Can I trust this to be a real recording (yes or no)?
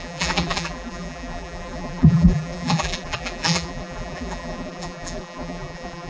no